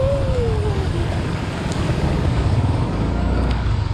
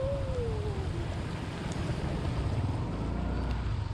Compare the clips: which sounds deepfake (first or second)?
first